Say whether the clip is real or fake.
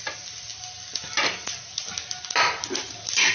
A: real